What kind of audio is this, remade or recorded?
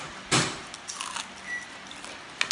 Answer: recorded